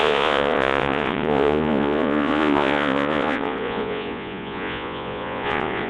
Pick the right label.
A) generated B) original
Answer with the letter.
A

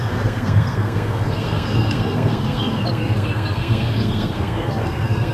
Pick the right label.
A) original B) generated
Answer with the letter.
B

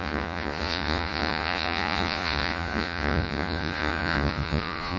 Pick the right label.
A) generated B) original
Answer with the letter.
A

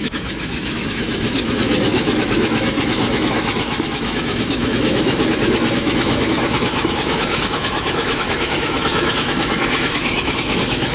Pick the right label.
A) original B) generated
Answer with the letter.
B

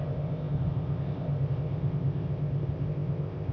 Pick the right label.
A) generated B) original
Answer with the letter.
A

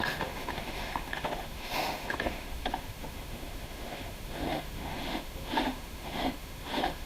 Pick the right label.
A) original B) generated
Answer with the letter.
B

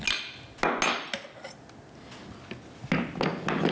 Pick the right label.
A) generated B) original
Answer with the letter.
B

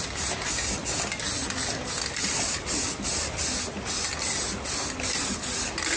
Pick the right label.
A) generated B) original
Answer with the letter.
B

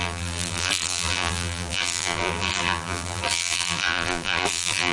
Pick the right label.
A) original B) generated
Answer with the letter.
B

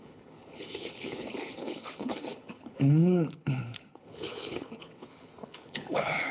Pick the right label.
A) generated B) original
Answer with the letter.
A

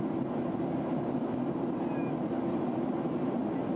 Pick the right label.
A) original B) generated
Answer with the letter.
A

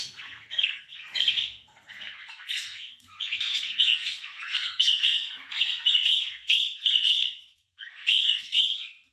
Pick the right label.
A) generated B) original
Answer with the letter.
A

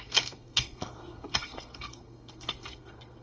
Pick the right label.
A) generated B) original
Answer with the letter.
A